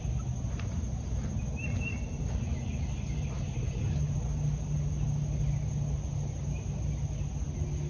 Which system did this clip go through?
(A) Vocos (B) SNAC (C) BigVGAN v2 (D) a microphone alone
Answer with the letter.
D